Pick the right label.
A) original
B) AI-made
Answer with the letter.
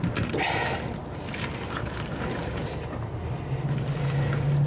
A